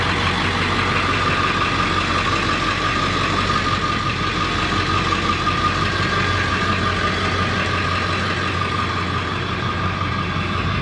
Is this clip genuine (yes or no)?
yes